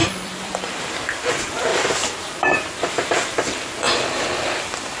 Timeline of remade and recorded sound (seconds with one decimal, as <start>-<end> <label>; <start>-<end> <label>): 0.0-0.8 remade; 0.8-1.7 recorded; 1.7-3.8 remade; 3.8-5.0 recorded